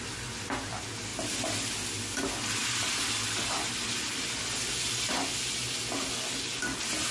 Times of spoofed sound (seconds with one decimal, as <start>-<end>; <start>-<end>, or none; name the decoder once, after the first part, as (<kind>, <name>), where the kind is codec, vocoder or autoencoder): none